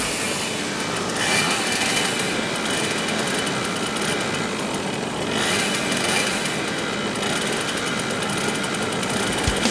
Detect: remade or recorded recorded